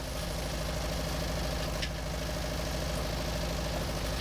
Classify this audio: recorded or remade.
recorded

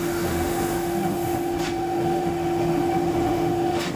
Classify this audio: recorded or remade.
remade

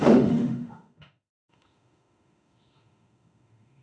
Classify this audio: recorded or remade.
remade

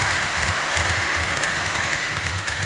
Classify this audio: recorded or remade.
remade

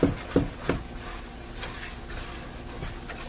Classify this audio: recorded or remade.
recorded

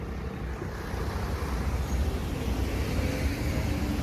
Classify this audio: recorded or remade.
recorded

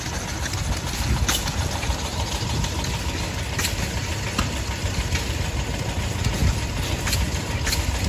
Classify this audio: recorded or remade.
recorded